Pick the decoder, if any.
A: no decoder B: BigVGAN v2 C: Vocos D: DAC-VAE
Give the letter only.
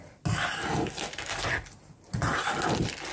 A